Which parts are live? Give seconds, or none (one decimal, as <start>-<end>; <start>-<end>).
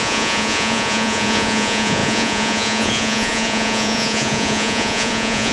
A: none